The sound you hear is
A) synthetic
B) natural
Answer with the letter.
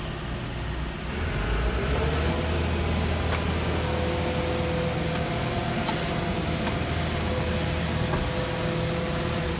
B